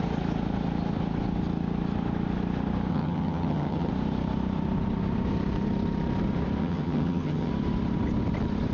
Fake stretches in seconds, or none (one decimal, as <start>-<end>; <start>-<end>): 2.9-3.9; 6.6-7.5